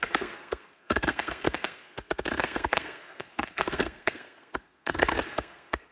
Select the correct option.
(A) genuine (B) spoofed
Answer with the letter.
B